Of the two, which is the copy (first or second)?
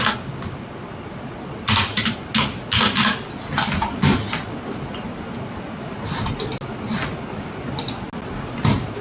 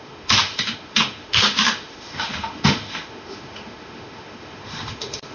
second